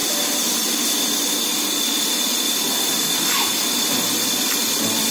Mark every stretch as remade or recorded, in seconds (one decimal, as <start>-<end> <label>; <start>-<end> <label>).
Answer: 0.0-3.1 recorded; 3.1-5.1 remade